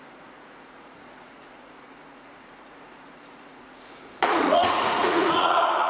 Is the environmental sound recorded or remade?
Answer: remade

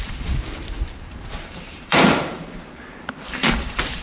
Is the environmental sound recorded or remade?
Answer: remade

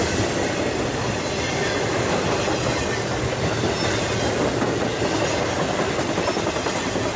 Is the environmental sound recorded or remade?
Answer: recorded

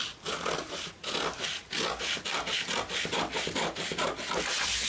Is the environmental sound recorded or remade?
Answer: recorded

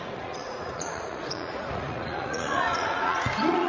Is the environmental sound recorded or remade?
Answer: remade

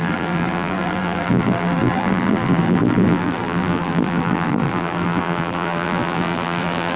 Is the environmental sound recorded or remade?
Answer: remade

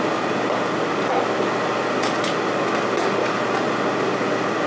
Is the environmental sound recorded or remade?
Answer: recorded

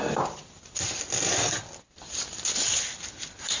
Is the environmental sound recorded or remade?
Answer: recorded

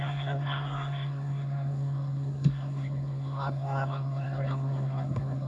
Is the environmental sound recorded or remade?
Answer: remade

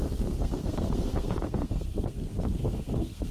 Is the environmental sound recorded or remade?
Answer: remade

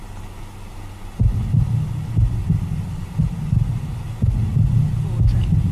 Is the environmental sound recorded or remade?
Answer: recorded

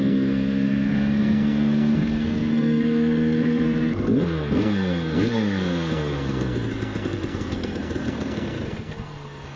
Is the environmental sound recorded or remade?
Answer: remade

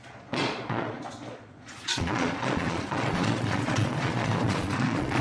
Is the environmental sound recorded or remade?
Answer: remade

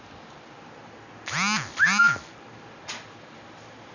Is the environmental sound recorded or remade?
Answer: recorded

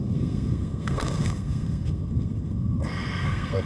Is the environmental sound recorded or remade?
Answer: remade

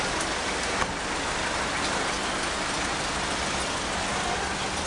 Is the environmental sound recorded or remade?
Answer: recorded